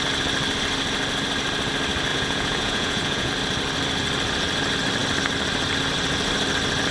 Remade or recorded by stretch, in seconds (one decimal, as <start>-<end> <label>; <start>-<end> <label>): 0.0-2.1 recorded; 2.1-3.3 remade; 3.3-6.9 recorded